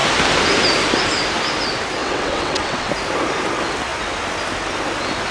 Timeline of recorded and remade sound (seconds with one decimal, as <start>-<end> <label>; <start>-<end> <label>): 0.0-2.0 recorded; 2.0-2.9 remade; 2.9-5.3 recorded

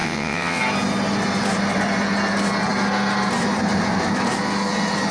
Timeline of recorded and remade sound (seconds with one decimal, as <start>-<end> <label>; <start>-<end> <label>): 0.0-0.6 remade; 0.6-5.1 recorded

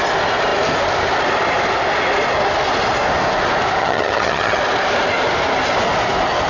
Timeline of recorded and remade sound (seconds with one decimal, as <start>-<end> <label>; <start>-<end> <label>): 0.0-3.8 recorded; 3.8-4.6 remade; 4.6-6.5 recorded

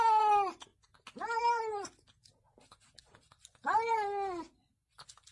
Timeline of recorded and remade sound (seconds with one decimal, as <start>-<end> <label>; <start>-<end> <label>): 0.0-5.3 recorded

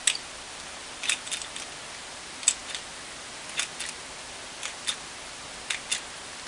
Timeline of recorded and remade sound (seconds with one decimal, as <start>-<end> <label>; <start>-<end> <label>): 0.0-6.5 recorded

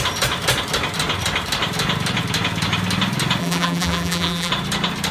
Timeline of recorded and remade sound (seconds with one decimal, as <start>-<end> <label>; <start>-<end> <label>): 0.0-3.4 recorded; 3.4-4.5 remade; 4.5-5.1 recorded

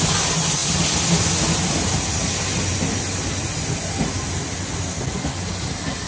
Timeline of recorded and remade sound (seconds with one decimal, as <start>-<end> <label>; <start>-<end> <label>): 0.0-6.1 recorded